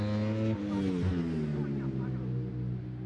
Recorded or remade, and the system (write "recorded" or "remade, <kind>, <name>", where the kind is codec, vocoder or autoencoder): recorded